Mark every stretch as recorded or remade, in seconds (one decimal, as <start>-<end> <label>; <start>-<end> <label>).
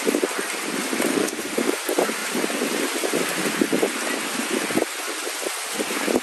0.0-1.1 recorded; 1.1-1.8 remade; 1.8-6.2 recorded